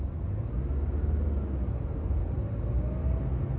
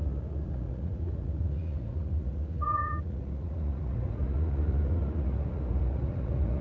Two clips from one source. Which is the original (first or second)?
first